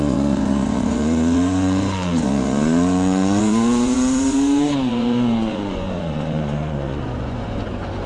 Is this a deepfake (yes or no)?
yes